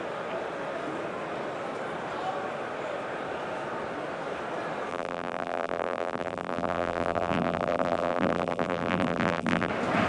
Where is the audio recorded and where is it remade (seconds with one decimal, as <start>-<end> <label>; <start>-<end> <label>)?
0.0-4.9 recorded; 4.9-9.7 remade; 9.7-10.1 recorded